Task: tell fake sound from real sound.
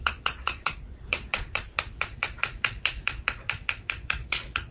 fake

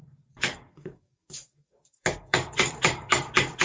fake